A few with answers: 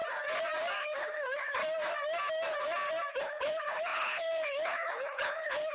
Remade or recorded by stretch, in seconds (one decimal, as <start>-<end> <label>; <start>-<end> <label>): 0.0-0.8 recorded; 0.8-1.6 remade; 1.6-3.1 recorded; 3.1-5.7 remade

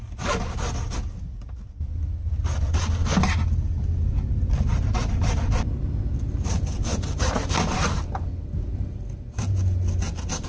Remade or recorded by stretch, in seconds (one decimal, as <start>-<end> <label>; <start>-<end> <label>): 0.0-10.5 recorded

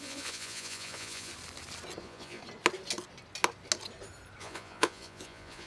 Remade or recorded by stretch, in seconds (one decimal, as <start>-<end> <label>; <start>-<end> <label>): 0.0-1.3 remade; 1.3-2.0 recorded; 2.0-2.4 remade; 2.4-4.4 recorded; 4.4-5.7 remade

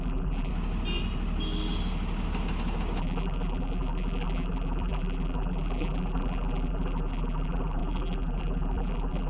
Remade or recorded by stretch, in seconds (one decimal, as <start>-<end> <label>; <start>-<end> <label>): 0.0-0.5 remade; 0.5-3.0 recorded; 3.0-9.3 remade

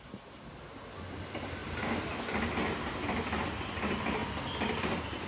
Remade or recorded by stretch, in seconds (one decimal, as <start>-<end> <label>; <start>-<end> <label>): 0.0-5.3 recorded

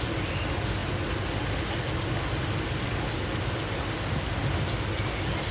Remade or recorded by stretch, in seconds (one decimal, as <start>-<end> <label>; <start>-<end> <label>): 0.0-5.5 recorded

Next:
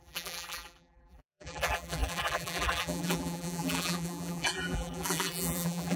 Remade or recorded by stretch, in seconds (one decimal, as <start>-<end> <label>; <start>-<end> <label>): 0.0-6.0 remade

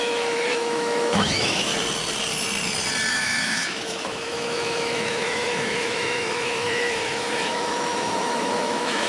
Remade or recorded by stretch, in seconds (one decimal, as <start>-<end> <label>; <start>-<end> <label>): 0.0-1.7 remade; 1.7-3.1 recorded; 3.1-9.1 remade